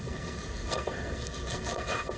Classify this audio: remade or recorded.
remade